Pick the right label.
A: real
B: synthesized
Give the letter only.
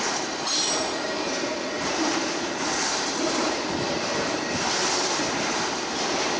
B